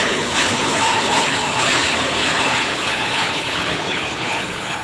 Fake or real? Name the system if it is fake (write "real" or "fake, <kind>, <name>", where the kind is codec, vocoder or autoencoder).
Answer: fake, codec, HILCodec